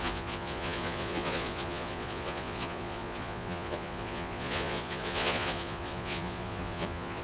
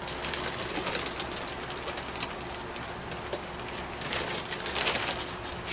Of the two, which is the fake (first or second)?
first